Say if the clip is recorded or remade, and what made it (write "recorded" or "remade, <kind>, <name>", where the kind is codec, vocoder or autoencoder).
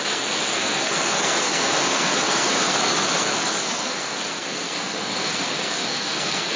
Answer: remade, codec, SNAC